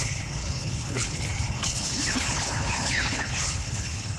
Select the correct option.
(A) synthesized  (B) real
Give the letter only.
A